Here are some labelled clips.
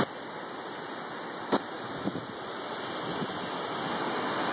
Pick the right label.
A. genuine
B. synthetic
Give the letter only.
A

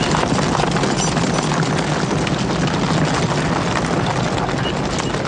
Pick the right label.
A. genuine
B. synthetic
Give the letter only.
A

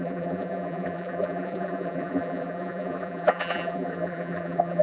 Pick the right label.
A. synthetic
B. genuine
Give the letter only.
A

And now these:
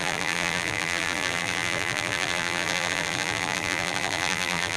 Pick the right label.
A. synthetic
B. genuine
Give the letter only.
A